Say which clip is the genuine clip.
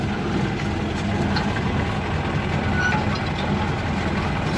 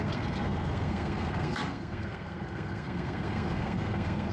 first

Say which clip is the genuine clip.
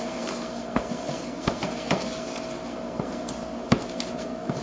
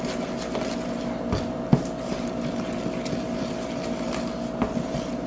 second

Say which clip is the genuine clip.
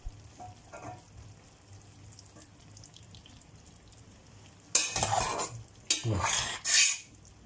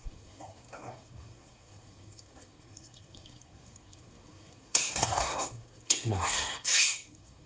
first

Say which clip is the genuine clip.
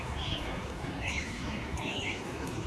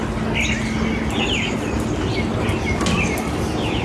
second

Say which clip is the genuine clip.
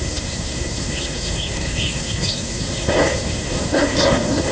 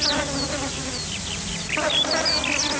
second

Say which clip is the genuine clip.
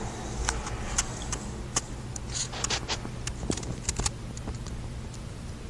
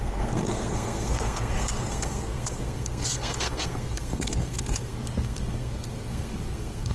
first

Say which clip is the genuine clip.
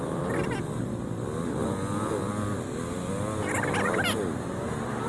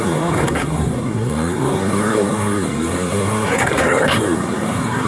first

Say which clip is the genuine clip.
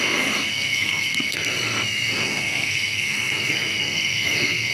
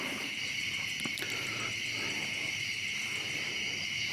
second